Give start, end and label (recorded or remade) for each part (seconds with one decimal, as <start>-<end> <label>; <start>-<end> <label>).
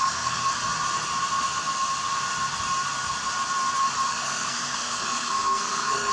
0.0-0.4 remade; 0.4-4.1 recorded; 4.1-6.1 remade